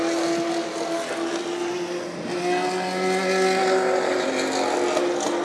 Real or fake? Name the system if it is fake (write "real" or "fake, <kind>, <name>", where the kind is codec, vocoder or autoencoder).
real